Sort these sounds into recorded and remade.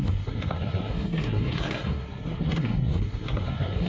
remade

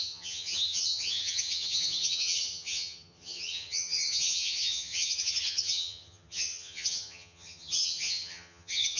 remade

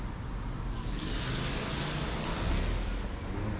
recorded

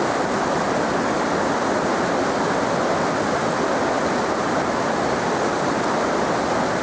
recorded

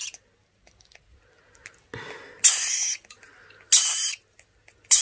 recorded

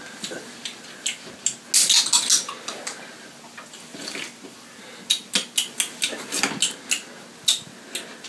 recorded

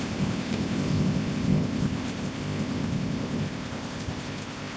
remade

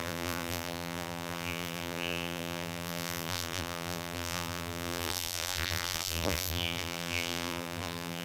remade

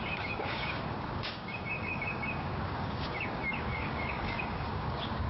remade